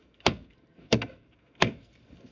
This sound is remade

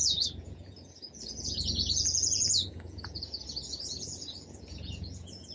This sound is remade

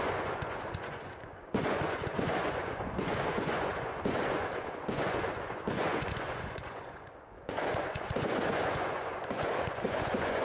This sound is remade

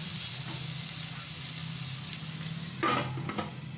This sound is recorded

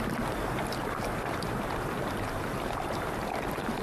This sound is recorded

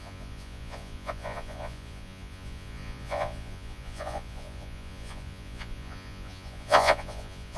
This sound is remade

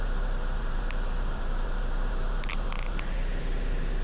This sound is remade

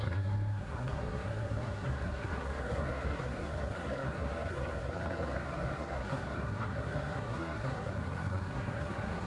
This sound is remade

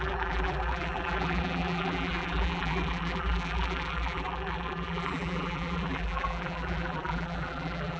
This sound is remade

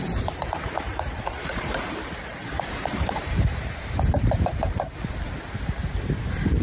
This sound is remade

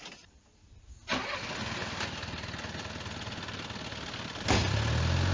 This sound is recorded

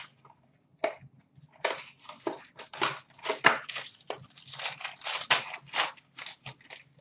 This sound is recorded